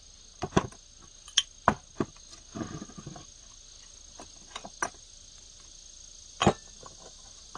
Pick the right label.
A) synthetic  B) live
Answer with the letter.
B